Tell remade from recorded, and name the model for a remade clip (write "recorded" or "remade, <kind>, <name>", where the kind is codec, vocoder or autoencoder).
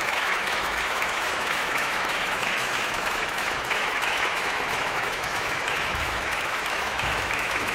remade, autoencoder, DAC-VAE